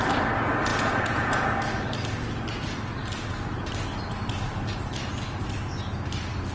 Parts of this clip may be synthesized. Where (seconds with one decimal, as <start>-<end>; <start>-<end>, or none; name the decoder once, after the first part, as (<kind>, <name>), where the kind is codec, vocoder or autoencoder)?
0.7-1.6 (vocoder, Vocos)